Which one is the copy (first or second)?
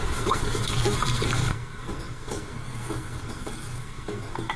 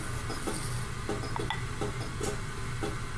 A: first